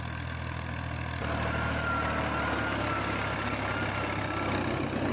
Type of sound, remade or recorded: recorded